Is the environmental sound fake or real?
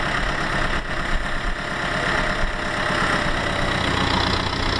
real